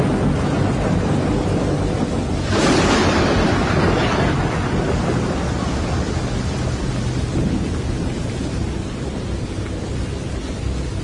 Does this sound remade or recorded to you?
recorded